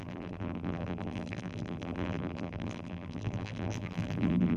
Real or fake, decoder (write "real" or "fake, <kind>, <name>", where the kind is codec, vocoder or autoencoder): fake, vocoder, BigVGAN v2